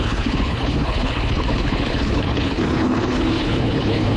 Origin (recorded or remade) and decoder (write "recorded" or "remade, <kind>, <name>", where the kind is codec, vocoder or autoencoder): remade, codec, HILCodec